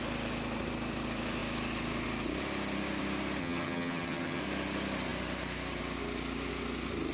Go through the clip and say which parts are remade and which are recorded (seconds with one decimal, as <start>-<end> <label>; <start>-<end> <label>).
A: 0.0-3.4 recorded; 3.4-4.4 remade; 4.4-7.1 recorded